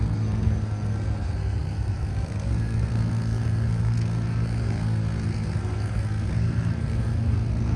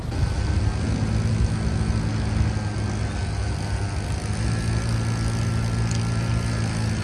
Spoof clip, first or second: first